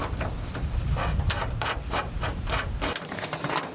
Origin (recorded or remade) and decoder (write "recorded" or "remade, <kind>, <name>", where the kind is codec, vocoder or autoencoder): recorded